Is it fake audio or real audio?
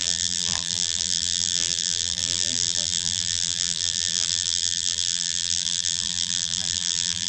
fake